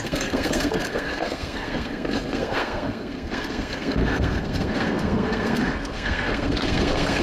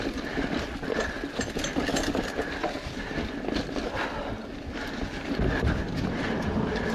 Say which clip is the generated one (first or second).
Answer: first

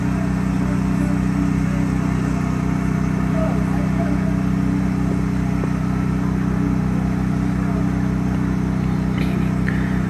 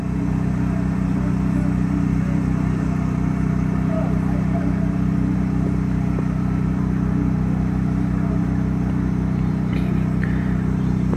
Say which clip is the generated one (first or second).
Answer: second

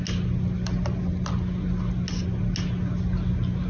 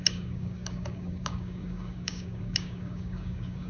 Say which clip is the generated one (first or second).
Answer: second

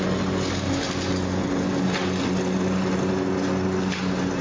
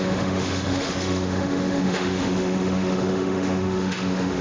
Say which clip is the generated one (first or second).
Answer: second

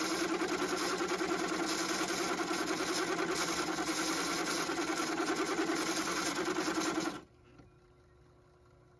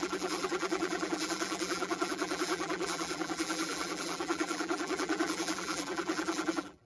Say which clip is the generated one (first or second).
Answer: second